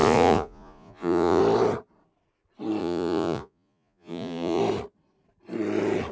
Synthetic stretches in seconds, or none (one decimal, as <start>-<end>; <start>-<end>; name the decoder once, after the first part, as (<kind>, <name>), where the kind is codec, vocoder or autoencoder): 0.0-1.4 (vocoder, Vocos); 2.8-4.6